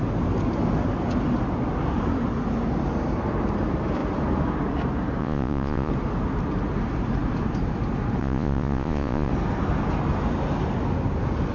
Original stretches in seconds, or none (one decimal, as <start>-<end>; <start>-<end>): 0.0-5.2; 5.9-8.2; 9.3-11.5